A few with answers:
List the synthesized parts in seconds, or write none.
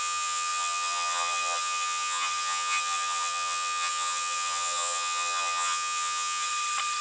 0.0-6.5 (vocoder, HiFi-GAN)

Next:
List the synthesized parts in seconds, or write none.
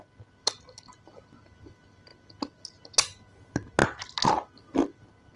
none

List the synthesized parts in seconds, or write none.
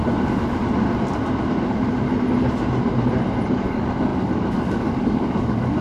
3.5-5.8 (codec, DAC)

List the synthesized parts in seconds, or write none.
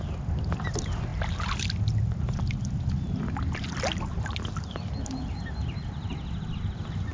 none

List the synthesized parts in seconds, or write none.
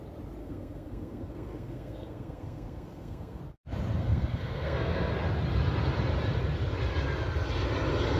0.4-3.4 (codec, SNAC); 4.0-5.1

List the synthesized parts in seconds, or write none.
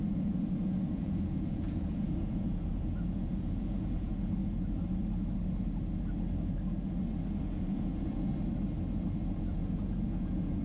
0.0-4.4 (vocoder, Vocos); 7.4-8.3; 9.3-10.6